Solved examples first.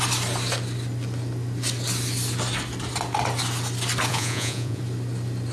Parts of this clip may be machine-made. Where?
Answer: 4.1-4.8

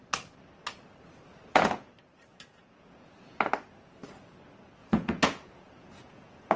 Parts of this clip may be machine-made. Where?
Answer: 1.3-1.9; 2.3-3.5; 4.8-6.6

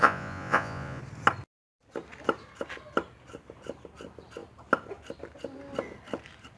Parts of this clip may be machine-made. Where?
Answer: 0.0-1.0

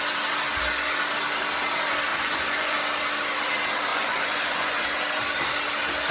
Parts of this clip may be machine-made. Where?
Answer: 2.1-2.8; 3.9-5.0

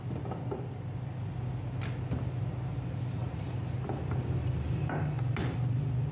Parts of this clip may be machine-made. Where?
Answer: none

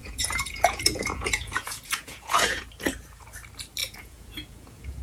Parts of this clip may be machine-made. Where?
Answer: 0.0-2.6; 3.8-5.0

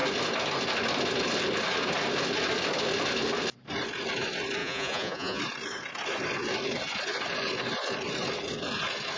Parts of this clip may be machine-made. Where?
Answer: 4.6-5.4

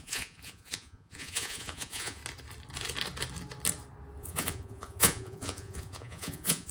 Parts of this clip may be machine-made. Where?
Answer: 0.0-2.2; 4.2-6.7